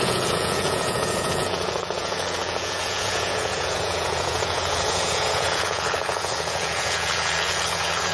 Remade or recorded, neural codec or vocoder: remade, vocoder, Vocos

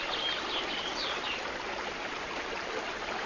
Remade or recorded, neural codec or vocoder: recorded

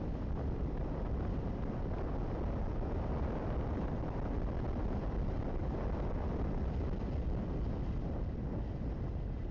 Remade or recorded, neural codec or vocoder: recorded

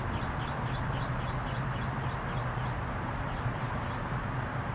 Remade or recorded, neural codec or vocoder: recorded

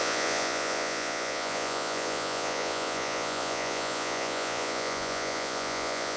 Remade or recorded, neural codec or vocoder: remade, vocoder, Vocos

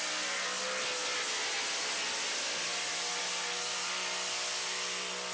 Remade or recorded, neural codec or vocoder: recorded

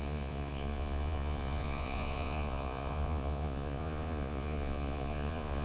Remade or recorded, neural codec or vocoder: remade, vocoder, Vocos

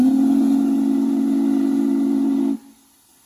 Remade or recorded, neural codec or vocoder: recorded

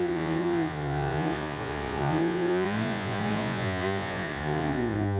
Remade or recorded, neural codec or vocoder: remade, vocoder, Vocos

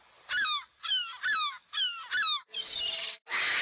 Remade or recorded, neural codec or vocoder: recorded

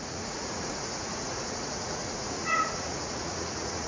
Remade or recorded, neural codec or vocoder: remade, vocoder, Vocos